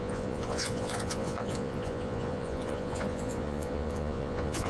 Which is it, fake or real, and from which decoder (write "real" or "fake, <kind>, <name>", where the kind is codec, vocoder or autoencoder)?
fake, vocoder, Vocos